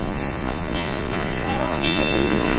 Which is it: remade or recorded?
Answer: remade